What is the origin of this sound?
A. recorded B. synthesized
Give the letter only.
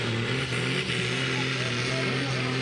A